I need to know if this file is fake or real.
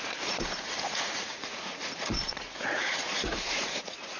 fake